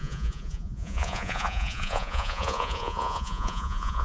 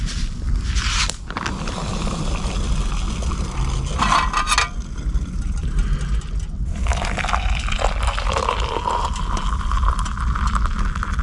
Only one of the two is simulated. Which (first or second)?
first